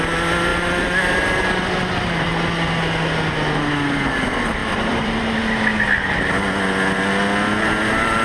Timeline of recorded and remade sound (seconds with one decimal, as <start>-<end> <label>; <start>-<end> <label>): 0.0-4.6 recorded; 4.6-5.2 remade; 5.2-8.2 recorded